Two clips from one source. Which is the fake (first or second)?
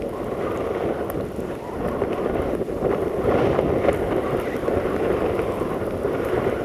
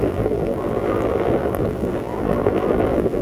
second